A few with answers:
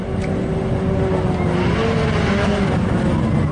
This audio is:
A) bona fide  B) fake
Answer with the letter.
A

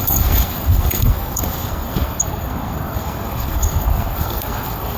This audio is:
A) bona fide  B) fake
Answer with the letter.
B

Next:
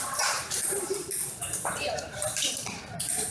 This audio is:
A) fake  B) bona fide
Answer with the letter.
A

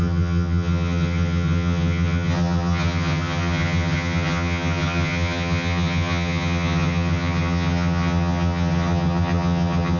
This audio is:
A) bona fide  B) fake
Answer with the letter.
B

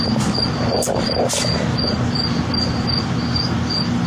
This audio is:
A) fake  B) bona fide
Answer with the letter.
B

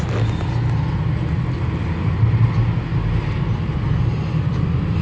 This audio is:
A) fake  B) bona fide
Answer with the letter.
B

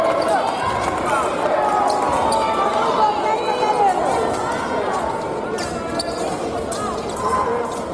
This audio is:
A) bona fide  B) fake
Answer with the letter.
A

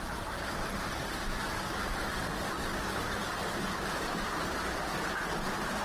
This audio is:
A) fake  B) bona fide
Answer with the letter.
A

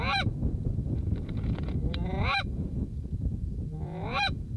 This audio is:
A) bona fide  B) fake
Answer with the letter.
B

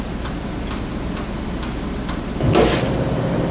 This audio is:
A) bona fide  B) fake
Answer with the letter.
A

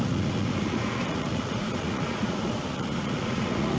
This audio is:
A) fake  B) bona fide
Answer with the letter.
A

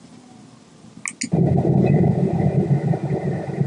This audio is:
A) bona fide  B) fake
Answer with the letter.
A